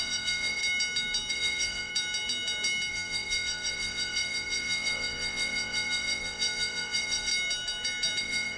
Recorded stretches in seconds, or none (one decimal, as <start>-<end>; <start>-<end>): 0.6-1.3; 1.9-2.9; 7.3-8.2